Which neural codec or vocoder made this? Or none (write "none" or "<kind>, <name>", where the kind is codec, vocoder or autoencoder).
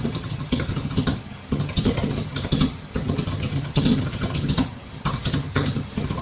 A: vocoder, HiFi-GAN